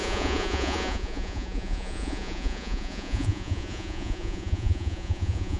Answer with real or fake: fake